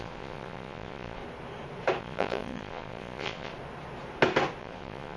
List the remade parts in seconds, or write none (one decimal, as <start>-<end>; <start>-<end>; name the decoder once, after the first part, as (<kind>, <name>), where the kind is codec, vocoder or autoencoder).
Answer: 0.0-1.2 (vocoder, Vocos); 2.0-3.5; 4.6-5.2

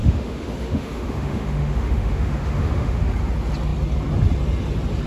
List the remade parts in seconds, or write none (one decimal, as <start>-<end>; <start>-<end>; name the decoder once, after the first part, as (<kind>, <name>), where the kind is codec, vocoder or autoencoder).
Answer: 0.0-3.1 (autoencoder, DAC-VAE)

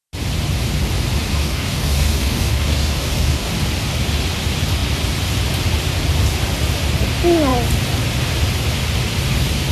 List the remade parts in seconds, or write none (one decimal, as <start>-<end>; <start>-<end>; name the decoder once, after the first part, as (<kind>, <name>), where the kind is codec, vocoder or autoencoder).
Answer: 1.3-3.5 (codec, DAC)

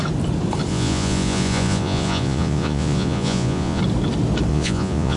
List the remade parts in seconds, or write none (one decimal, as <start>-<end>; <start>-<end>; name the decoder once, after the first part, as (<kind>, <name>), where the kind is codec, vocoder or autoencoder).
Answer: 0.7-3.8 (vocoder, Vocos); 4.5-5.2

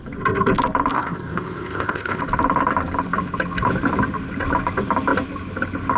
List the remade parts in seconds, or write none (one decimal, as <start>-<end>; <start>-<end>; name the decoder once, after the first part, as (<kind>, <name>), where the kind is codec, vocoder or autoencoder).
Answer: 0.9-2.2 (codec, ZipCodec)

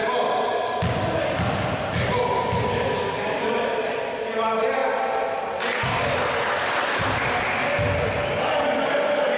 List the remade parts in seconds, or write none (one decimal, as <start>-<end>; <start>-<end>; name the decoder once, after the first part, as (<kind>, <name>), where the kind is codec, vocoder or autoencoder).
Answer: 4.1-4.8 (vocoder, BigVGAN v2)